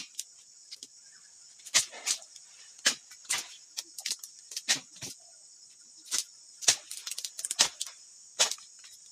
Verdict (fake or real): real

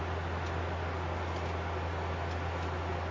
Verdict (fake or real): real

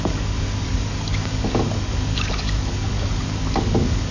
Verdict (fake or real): fake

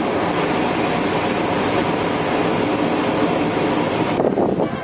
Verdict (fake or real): real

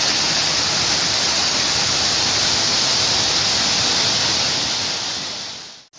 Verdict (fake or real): real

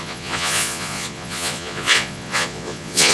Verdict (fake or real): fake